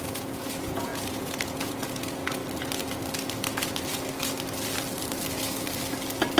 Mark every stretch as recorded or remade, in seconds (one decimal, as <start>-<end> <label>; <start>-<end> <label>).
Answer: 0.0-2.4 remade; 2.4-6.4 recorded